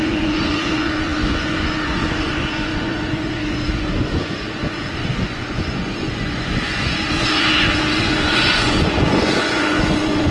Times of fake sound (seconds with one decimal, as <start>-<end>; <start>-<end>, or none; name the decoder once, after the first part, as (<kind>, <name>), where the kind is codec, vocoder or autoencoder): 0.0-10.3 (vocoder, Vocos)